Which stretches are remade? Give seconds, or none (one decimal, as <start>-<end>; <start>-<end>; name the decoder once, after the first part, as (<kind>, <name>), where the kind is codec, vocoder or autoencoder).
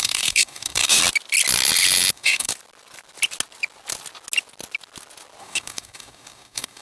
0.0-1.0 (codec, DAC); 2.1-2.5; 5.4-6.8